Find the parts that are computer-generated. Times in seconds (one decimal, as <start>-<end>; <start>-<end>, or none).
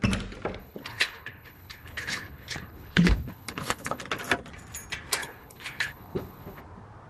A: 0.6-4.0; 5.2-6.6